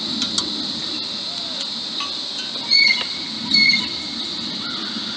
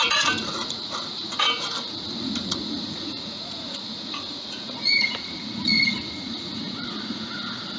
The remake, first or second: second